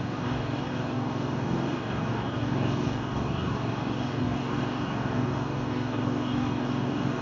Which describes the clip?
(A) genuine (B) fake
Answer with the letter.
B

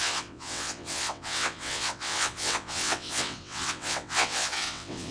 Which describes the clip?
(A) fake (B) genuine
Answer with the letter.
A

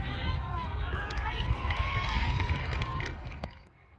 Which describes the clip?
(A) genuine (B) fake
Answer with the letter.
B